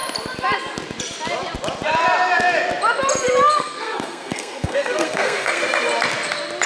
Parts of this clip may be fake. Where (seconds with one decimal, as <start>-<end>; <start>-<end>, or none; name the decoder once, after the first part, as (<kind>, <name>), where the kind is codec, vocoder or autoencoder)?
3.5-5.6 (codec, SNAC)

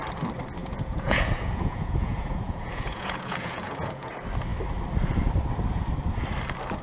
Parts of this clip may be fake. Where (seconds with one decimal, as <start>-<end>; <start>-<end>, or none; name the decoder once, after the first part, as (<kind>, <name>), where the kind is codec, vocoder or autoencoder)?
0.6-4.1 (vocoder, Vocos)

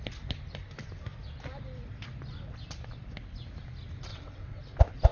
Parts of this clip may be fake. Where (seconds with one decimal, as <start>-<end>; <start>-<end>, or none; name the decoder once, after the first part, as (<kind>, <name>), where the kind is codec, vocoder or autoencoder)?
4.1-4.6 (vocoder, WaveNeXt)

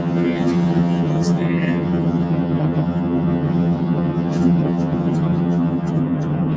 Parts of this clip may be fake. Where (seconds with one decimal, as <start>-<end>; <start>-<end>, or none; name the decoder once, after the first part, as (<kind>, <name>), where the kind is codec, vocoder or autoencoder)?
0.0-6.6 (vocoder, HiFi-GAN)

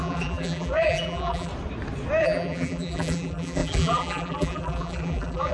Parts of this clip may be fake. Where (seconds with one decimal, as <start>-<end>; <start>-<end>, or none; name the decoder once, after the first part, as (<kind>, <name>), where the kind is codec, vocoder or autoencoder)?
0.0-1.5 (vocoder, BigVGAN v2); 2.2-5.5

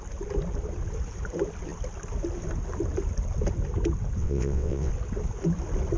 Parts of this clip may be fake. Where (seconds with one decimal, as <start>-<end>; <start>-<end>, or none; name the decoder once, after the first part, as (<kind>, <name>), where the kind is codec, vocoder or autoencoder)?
4.2-4.9 (vocoder, WaveNeXt)

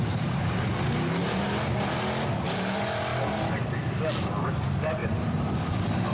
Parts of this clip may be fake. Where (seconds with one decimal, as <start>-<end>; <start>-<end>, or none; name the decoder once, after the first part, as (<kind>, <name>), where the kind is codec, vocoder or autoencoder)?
3.1-4.1 (vocoder, BigVGAN v2); 5.0-6.1